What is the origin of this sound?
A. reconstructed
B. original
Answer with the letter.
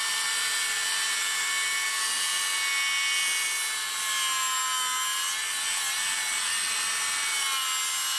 B